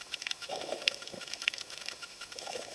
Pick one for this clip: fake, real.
fake